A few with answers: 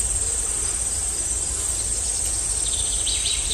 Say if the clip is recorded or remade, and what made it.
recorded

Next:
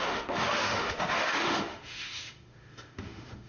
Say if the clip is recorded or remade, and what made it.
remade, autoencoder, DAC-VAE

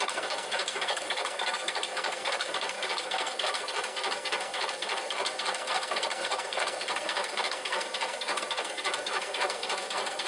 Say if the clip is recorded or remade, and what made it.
remade, codec, SNAC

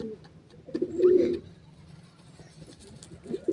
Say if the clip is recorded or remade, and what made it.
recorded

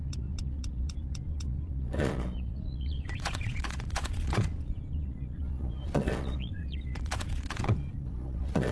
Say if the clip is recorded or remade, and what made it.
remade, vocoder, Vocos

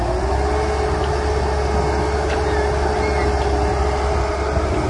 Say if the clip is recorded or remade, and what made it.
recorded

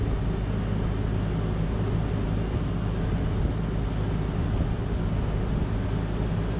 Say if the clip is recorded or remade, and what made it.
recorded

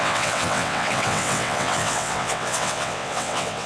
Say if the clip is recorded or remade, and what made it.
remade, vocoder, WaveNeXt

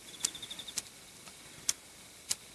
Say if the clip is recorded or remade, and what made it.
recorded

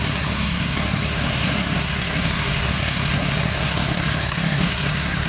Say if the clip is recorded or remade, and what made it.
remade, codec, SNAC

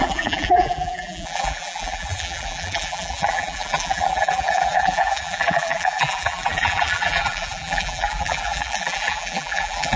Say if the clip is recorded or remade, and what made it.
remade, vocoder, BigVGAN v2